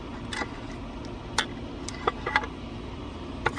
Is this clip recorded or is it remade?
recorded